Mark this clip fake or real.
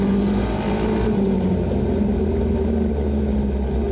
real